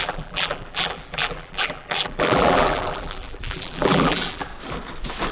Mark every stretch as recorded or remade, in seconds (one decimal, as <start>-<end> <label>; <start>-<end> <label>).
0.0-4.5 remade; 4.5-5.3 recorded